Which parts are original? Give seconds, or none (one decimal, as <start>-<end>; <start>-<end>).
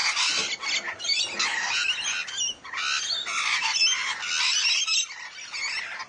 0.0-6.1